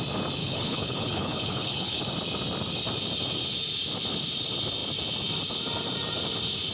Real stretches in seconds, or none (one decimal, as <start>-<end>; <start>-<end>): 0.0-0.4; 2.0-6.7